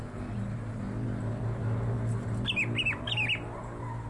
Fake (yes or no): no